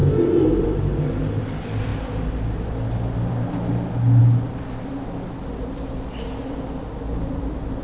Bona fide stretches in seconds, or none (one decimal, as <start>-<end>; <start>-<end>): 0.0-7.8